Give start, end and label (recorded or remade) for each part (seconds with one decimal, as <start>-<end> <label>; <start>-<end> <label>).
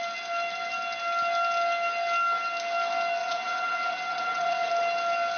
0.0-3.2 recorded; 3.2-4.7 remade; 4.7-5.4 recorded